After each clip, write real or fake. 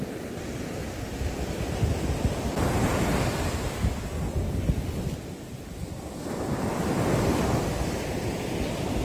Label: real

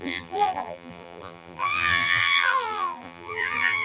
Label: fake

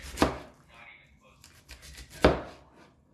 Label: real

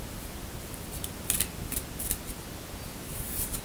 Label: real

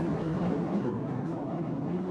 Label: fake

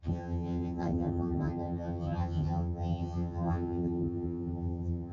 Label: fake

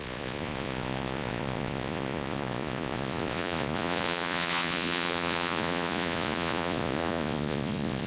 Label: fake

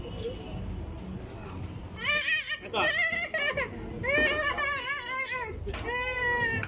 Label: real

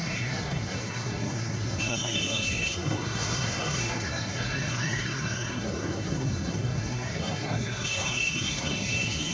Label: fake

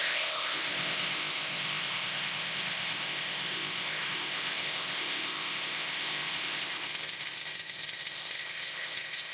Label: fake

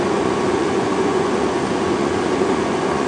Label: fake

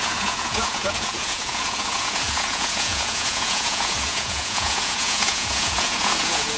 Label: fake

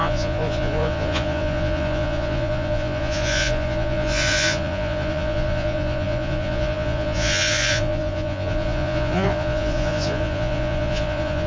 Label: fake